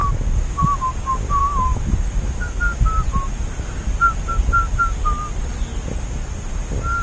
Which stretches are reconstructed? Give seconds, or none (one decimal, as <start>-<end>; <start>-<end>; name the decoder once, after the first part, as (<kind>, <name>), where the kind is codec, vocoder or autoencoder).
0.0-0.6 (autoencoder, DAC-VAE); 1.4-2.6